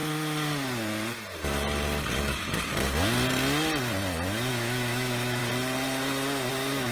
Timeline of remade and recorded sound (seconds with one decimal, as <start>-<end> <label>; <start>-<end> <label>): 0.0-2.2 recorded; 2.2-2.7 remade; 2.7-4.5 recorded; 4.5-5.4 remade; 5.4-6.5 recorded; 6.5-6.9 remade